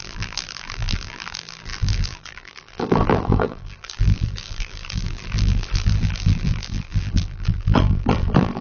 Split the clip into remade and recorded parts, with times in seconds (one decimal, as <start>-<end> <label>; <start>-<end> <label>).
0.0-8.6 remade

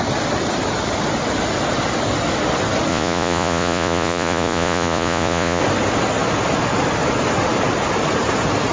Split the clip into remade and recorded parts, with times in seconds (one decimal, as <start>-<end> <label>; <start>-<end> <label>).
0.0-2.9 recorded; 2.9-5.6 remade; 5.6-8.7 recorded

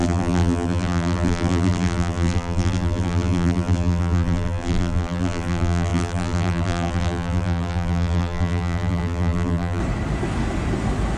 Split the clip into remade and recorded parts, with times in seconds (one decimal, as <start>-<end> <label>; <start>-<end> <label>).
0.0-9.8 remade; 9.8-11.2 recorded

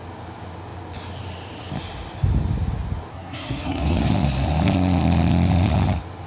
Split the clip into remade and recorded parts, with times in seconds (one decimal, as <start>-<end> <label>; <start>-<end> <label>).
0.0-3.1 recorded; 3.1-4.1 remade; 4.1-6.3 recorded

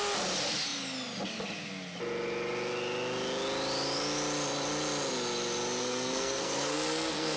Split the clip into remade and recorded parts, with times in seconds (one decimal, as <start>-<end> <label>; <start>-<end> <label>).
0.0-5.8 recorded; 5.8-7.4 remade

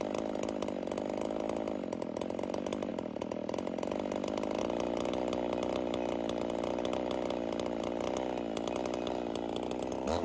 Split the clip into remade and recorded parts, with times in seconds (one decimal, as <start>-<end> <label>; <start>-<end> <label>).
0.0-10.2 recorded